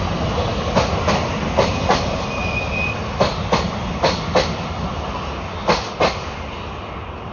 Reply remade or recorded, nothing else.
recorded